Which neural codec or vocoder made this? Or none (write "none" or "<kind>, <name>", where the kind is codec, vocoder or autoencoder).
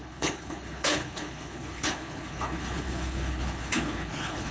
codec, HILCodec